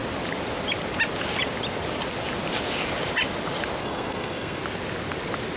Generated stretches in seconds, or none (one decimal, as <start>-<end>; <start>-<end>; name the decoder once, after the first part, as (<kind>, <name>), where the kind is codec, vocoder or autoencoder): 3.8-4.6 (codec, SNAC)